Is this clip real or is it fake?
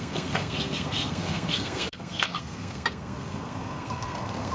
fake